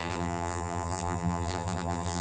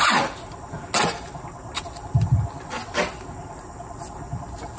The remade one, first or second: first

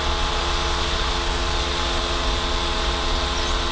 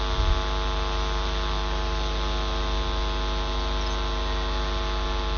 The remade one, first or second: first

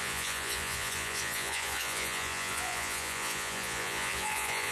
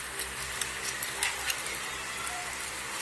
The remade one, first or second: first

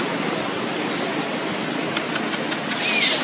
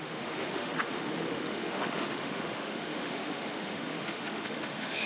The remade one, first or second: second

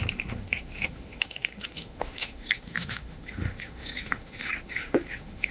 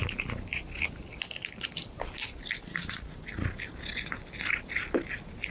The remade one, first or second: first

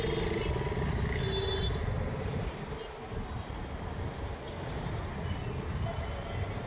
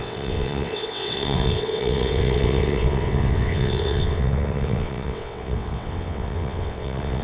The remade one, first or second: second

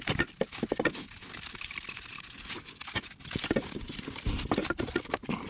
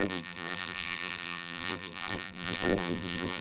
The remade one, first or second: second